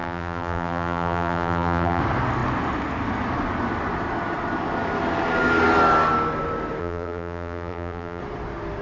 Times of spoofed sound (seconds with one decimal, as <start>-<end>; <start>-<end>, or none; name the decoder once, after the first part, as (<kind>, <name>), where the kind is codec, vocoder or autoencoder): 0.0-2.0 (vocoder, BigVGAN v2); 6.8-8.2